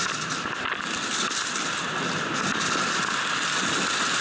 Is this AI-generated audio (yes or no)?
no